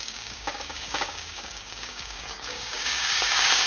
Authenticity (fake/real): fake